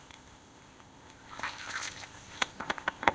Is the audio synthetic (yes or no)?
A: yes